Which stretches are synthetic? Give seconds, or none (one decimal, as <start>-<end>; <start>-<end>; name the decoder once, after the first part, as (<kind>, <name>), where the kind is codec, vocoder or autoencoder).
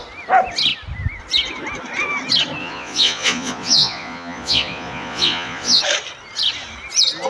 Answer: 2.6-5.8 (vocoder, Vocos)